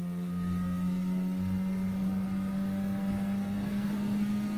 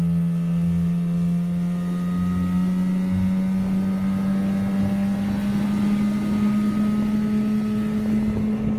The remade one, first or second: first